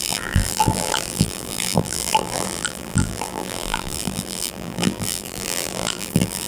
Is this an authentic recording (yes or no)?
no